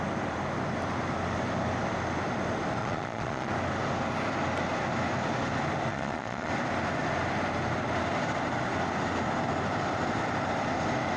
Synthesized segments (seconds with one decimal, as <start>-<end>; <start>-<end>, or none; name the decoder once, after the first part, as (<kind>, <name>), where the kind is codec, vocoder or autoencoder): 2.8-3.5 (vocoder, Vocos); 5.9-6.5